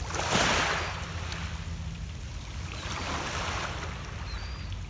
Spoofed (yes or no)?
no